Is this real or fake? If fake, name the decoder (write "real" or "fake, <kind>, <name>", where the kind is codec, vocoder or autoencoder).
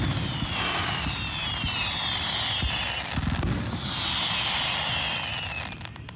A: real